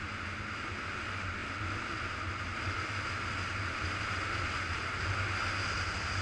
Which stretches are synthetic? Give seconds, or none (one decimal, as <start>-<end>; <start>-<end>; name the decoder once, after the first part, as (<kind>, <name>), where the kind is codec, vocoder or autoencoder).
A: none